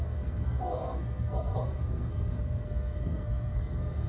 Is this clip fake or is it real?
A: fake